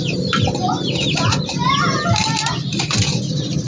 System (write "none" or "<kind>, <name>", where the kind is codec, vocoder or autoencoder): none